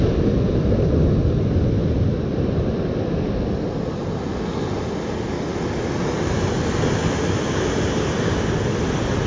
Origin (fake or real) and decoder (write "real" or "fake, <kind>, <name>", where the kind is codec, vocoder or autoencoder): real